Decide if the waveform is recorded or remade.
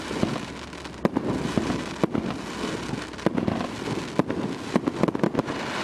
recorded